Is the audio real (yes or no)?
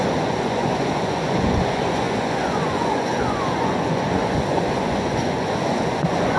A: no